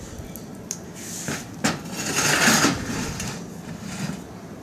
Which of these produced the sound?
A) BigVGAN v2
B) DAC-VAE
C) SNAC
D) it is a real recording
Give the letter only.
D